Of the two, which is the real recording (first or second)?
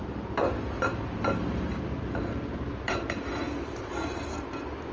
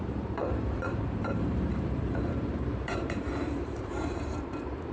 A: first